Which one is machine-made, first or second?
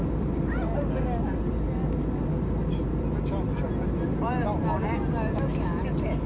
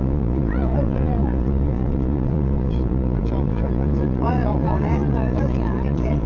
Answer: second